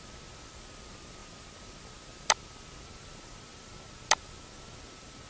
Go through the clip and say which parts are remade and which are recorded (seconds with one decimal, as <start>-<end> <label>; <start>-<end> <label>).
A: 0.0-5.3 recorded